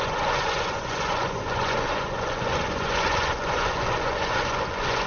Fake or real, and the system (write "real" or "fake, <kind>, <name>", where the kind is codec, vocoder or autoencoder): fake, vocoder, Vocos